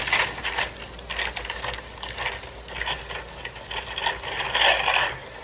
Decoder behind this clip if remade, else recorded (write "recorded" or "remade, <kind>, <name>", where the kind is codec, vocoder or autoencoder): recorded